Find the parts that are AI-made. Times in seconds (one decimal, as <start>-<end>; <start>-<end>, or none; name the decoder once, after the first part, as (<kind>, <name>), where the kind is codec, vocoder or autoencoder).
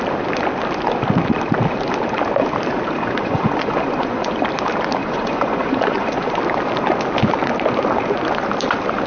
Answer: 3.0-4.3 (vocoder, Vocos); 5.0-6.4